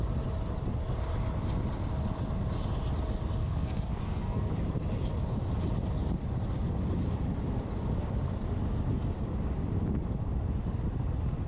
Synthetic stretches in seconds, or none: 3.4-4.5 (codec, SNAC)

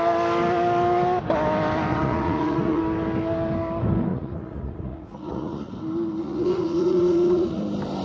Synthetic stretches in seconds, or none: 1.9-2.8 (vocoder, Vocos); 4.1-5.7; 6.2-7.6

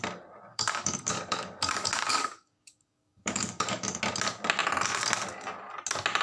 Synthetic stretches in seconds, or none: 0.5-4.0 (codec, DAC)